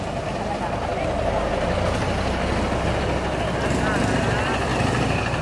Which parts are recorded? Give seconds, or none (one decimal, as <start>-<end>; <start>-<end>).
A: 0.0-5.4